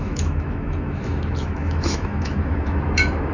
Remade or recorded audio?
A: remade